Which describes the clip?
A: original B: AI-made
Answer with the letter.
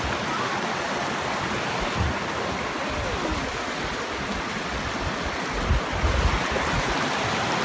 A